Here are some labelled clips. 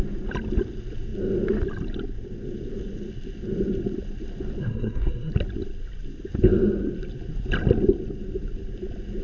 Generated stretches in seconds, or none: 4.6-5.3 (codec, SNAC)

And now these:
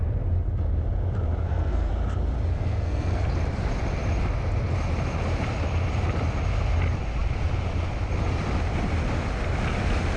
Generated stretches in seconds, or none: 1.4-1.9 (codec, SNAC); 2.5-3.2

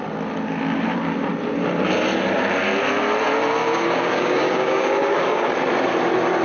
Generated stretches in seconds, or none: 3.6-5.5 (codec, DAC)